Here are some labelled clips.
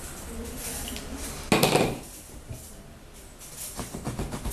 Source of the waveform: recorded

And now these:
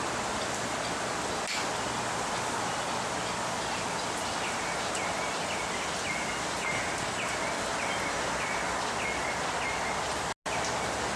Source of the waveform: recorded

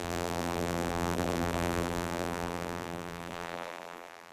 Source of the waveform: remade